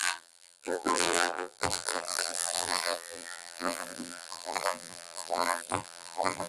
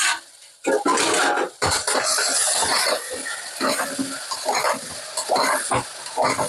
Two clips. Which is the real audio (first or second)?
second